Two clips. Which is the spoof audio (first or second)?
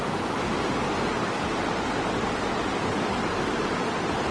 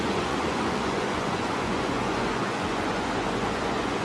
second